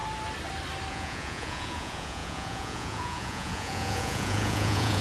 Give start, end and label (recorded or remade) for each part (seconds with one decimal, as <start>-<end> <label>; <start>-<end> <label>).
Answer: 0.0-0.9 recorded; 0.9-5.0 remade